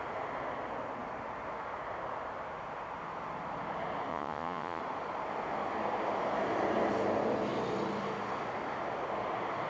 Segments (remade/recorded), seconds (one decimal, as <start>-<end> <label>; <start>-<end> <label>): 0.0-4.1 recorded; 4.1-4.8 remade; 4.8-9.7 recorded